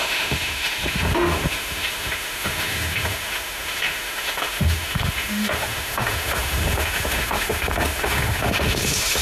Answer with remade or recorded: remade